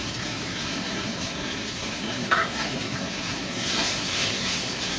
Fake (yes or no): yes